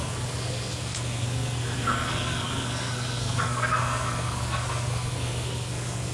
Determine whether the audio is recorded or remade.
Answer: remade